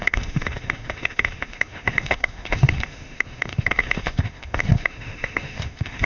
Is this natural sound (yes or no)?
no